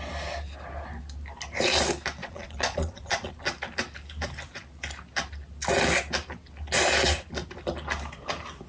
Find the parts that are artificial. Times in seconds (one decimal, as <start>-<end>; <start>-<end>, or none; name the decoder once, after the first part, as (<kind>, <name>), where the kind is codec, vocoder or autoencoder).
2.2-3.3 (vocoder, Vocos)